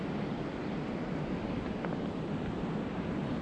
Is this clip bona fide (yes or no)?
yes